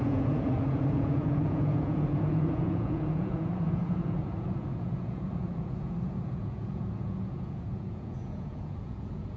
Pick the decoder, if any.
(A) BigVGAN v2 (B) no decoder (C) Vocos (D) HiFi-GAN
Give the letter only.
C